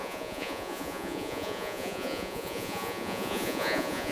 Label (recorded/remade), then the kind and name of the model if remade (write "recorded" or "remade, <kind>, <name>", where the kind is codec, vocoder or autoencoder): remade, vocoder, Vocos